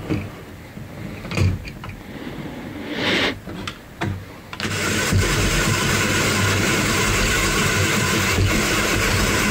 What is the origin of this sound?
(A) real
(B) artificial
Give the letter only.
B